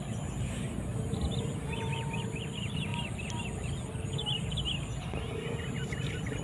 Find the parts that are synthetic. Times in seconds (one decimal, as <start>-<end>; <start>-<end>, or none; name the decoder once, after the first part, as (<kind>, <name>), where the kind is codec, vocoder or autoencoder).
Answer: none